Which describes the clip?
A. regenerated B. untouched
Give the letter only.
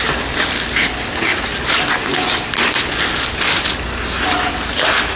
B